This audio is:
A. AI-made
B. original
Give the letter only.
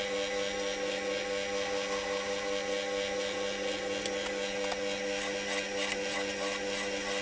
B